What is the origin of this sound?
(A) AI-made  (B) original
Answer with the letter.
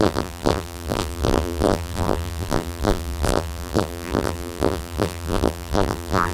A